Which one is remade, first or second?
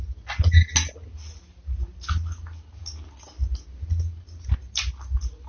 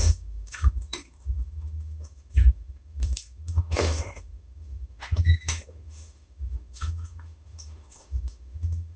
second